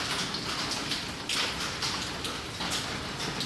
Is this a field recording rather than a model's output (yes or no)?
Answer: yes